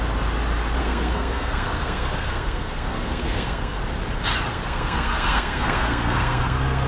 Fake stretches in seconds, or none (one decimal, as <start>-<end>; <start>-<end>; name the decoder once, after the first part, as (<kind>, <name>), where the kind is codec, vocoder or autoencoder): 0.8-3.8 (codec, SNAC); 4.5-6.9